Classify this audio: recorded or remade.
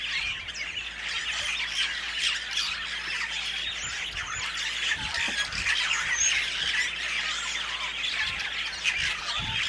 recorded